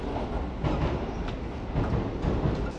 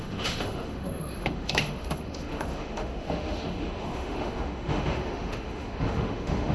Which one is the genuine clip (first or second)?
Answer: first